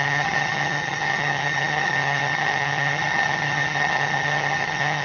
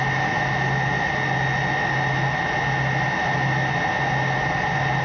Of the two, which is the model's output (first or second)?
first